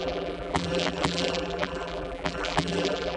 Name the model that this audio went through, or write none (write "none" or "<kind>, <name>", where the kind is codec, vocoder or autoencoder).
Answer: vocoder, BigVGAN v2